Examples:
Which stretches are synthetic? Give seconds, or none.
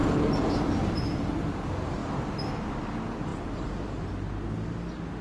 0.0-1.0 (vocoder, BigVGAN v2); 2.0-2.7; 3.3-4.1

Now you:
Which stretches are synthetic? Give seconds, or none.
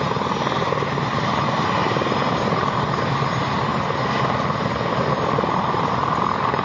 1.8-3.0 (vocoder, BigVGAN v2); 4.9-5.8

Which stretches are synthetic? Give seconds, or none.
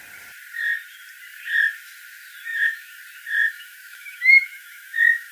2.5-3.0 (autoencoder, DAC-VAE); 3.4-5.3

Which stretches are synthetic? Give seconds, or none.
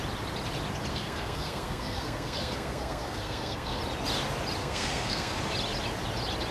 0.9-3.8 (codec, SNAC); 4.6-5.4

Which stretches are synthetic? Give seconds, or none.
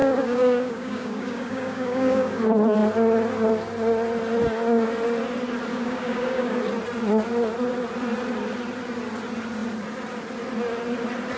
0.0-2.4 (codec, DAC); 5.7-6.6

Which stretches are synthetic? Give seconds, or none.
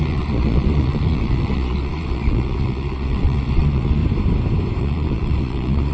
0.0-4.0 (vocoder, Vocos); 4.8-5.9